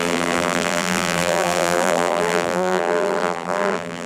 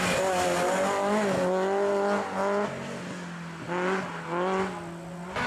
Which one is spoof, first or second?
first